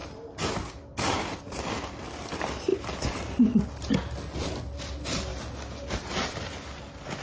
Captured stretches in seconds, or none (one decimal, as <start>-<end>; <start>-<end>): 0.0-7.2